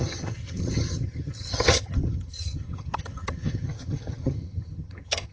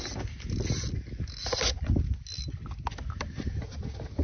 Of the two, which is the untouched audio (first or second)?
second